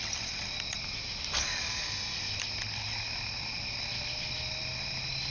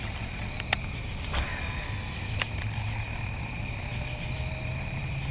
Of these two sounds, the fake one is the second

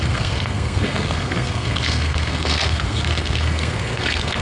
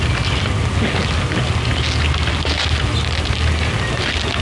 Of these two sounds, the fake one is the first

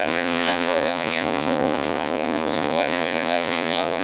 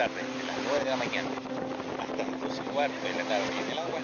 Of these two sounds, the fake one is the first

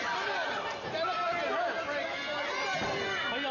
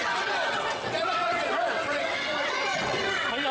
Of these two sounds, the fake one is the second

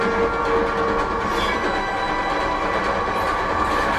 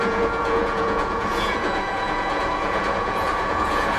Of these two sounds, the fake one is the second